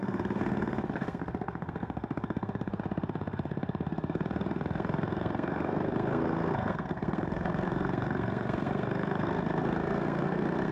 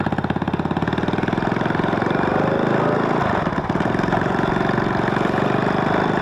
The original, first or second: second